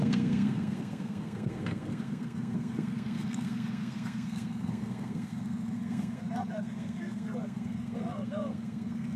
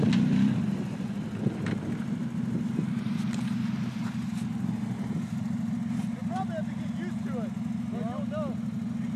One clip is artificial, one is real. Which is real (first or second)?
second